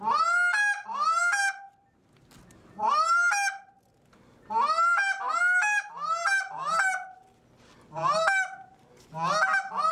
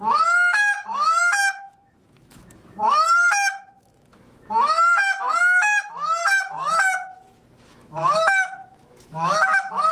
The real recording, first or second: first